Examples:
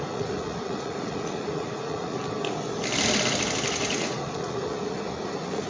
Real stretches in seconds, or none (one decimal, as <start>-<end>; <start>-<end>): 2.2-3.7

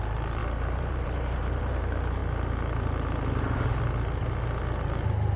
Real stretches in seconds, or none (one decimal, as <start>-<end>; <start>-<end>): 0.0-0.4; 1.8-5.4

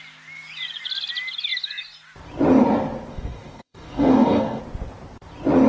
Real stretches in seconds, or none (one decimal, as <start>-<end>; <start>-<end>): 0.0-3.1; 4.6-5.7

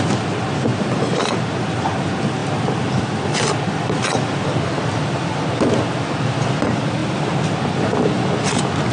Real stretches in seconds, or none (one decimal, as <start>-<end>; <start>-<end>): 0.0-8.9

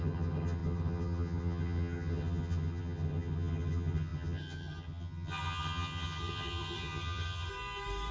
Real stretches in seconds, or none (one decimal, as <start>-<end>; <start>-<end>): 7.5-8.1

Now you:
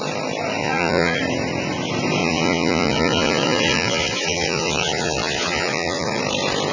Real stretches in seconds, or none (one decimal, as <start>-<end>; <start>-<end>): 0.0-0.6; 1.2-2.2; 6.2-6.7